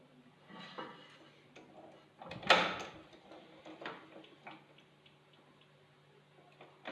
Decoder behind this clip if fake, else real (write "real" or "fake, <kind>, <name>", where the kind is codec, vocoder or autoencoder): real